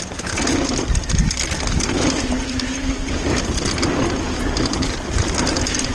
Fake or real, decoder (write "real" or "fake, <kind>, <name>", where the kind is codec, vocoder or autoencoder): real